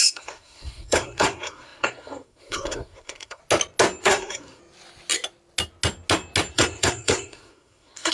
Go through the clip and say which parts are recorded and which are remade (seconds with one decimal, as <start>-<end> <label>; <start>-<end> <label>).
0.0-3.4 remade; 3.4-4.0 recorded; 4.0-4.6 remade; 4.6-6.5 recorded; 6.5-8.1 remade